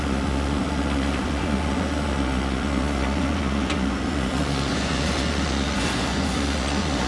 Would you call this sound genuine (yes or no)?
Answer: no